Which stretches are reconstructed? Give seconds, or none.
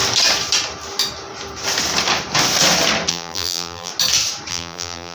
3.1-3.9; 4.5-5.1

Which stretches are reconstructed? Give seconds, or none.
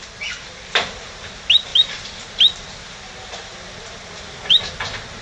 none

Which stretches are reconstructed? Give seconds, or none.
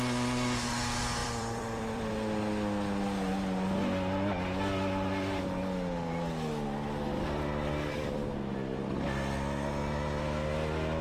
1.2-2.1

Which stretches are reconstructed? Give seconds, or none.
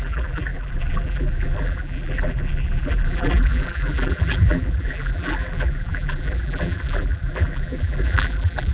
0.0-8.7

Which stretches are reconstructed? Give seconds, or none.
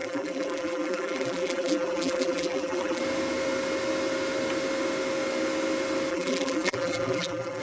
0.0-3.0; 6.1-7.6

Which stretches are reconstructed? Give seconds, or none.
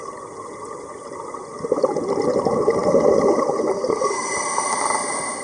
none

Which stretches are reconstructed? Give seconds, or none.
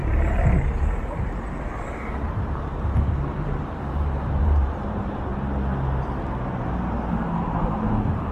0.0-5.3; 7.4-8.3